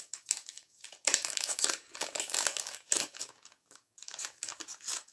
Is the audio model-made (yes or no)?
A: yes